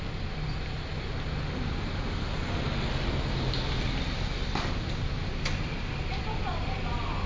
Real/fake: real